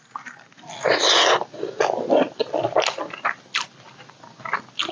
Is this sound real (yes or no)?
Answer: yes